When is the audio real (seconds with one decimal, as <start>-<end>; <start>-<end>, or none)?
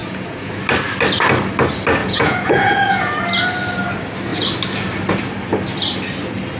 0.5-2.0; 3.1-6.6